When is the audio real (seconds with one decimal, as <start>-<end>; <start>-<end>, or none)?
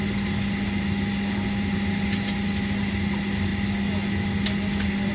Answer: 0.0-5.1